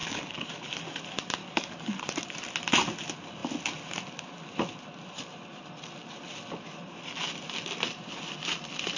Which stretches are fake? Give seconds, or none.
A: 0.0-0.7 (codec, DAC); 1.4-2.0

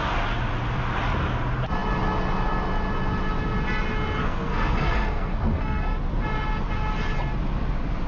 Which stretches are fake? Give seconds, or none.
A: 4.2-5.8 (codec, SNAC)

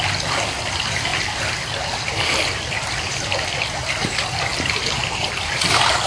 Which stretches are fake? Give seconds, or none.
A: none

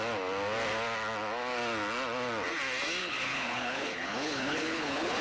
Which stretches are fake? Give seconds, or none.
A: 3.0-5.2 (codec, HILCodec)

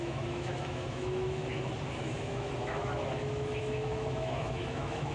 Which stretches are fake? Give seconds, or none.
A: 0.0-1.4 (autoencoder, DAC-VAE); 2.0-5.1